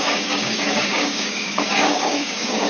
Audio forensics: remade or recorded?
remade